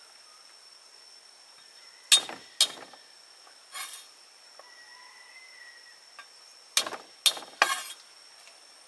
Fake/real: real